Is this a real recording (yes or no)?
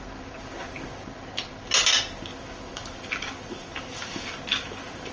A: yes